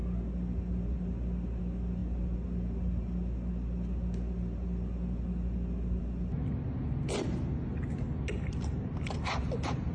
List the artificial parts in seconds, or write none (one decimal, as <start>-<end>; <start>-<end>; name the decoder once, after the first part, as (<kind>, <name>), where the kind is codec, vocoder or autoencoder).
none